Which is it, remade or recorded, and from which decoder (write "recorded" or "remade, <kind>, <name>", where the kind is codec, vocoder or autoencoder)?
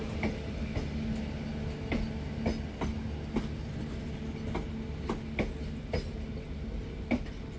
recorded